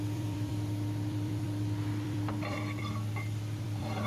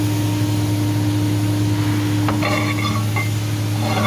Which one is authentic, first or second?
second